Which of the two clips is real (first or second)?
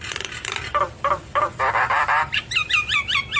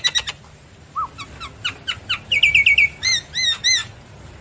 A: second